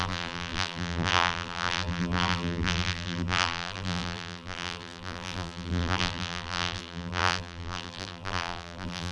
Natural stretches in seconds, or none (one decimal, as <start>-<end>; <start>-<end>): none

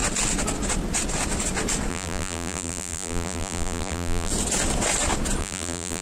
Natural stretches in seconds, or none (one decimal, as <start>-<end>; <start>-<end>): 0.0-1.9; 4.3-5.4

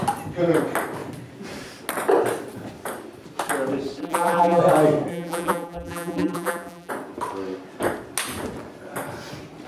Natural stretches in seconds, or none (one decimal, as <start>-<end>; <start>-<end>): 0.0-4.0; 4.6-5.1; 6.9-9.7